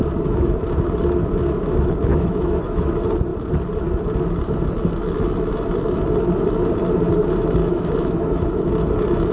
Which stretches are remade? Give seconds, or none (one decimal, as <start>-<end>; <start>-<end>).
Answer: 2.1-2.9; 7.6-8.5